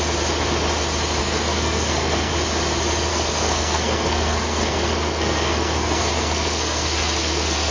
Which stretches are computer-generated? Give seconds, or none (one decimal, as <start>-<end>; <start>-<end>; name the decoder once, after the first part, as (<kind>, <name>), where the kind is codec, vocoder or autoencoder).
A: 1.2-2.3 (codec, SNAC); 3.1-7.7